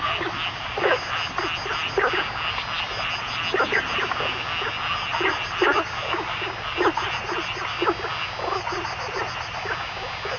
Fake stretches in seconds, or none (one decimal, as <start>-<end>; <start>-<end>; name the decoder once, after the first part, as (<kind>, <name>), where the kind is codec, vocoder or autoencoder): none